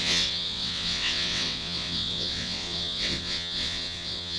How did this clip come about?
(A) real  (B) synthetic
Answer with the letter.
B